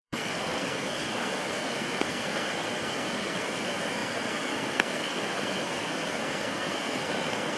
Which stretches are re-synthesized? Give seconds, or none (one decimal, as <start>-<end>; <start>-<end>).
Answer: 0.0-7.6